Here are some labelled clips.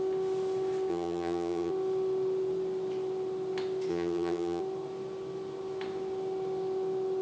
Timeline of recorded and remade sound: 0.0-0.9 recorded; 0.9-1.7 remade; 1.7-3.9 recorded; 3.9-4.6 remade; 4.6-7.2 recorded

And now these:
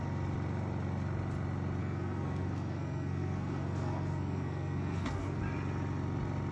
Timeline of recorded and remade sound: 0.0-1.8 recorded; 1.8-5.4 remade; 5.4-6.5 recorded

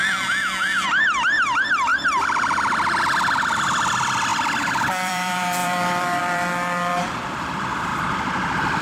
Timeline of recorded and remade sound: 0.0-1.9 remade; 1.9-3.0 recorded; 3.0-7.9 remade; 7.9-8.8 recorded